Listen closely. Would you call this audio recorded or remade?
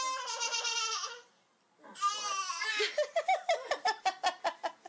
recorded